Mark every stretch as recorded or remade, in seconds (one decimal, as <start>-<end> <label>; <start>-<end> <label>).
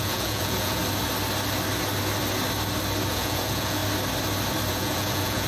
0.0-0.8 remade; 0.8-3.1 recorded; 3.1-3.8 remade; 3.8-4.7 recorded; 4.7-5.5 remade